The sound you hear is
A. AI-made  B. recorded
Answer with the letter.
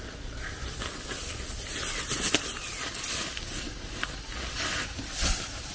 B